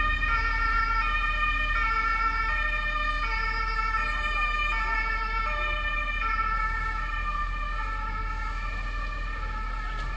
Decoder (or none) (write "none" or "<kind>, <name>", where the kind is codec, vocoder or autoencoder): none